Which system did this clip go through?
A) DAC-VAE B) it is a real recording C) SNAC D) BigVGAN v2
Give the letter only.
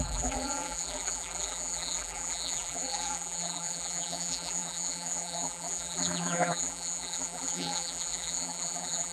D